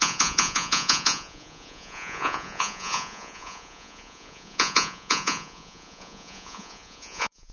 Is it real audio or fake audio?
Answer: fake